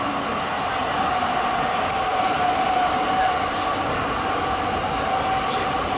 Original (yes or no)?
yes